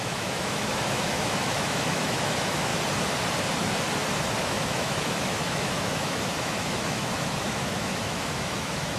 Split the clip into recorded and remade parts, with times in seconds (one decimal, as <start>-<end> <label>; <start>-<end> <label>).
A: 0.0-2.7 remade; 2.7-4.4 recorded; 4.4-9.0 remade